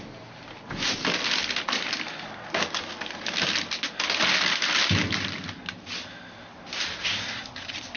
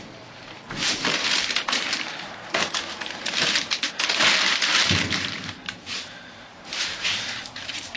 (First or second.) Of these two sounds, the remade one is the second